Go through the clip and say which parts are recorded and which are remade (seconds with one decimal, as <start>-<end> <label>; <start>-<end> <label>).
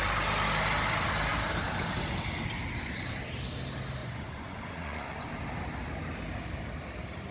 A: 0.0-4.0 recorded; 4.0-5.3 remade; 5.3-7.3 recorded